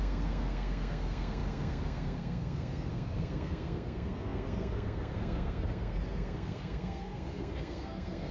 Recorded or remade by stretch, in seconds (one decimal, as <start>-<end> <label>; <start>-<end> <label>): 0.0-8.3 remade